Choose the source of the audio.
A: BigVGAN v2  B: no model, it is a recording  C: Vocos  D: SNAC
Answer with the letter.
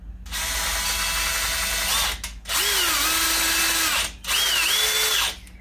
B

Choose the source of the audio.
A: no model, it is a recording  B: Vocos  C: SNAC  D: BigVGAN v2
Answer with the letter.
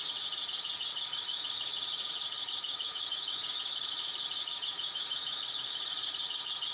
B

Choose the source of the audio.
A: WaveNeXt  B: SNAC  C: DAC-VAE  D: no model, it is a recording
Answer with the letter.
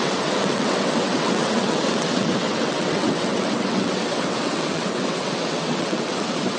A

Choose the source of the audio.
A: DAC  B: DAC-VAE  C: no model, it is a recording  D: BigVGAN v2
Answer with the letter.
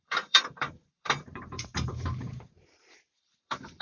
D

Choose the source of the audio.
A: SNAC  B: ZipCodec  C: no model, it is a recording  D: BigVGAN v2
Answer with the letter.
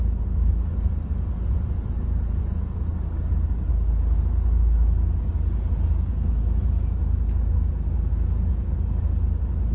C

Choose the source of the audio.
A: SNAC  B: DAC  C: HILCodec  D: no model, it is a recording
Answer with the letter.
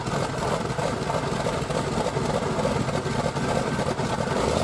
D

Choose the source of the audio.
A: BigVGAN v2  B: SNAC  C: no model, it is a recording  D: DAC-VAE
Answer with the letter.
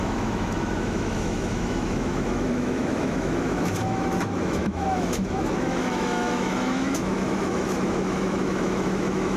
D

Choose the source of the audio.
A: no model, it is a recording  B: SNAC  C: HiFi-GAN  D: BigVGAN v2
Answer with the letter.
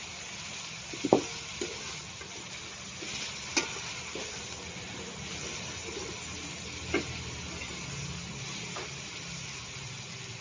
A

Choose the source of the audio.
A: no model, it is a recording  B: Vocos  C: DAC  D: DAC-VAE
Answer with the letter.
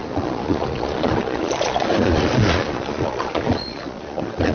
B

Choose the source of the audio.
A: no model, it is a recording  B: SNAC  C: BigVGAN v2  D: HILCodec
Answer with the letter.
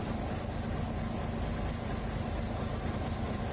A